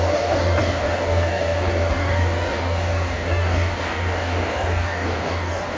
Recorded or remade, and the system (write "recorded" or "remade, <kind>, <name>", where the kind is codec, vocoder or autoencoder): remade, codec, DAC